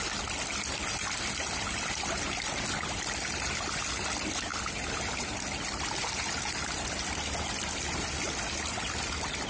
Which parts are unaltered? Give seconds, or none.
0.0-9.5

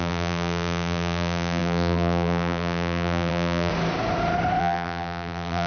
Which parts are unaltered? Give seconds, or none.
3.7-4.6

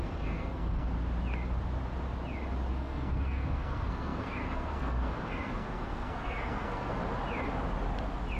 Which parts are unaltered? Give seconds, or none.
0.9-2.7; 7.0-8.4

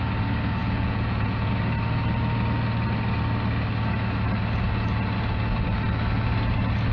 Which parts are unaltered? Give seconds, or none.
0.0-0.6; 1.5-6.9

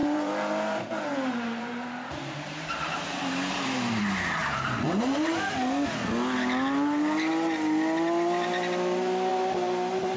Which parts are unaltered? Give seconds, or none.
4.0-4.4; 5.3-10.2